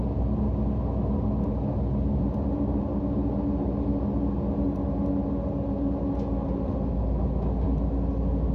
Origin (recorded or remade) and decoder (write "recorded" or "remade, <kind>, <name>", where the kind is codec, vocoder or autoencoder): recorded